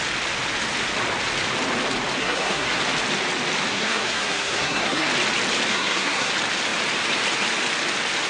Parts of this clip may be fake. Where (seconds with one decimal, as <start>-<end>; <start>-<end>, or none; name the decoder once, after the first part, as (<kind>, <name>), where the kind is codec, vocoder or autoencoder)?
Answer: 2.2-2.8 (codec, SNAC); 3.7-5.1; 5.7-6.3